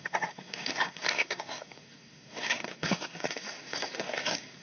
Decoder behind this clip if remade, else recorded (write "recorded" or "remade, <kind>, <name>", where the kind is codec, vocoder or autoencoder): remade, codec, SNAC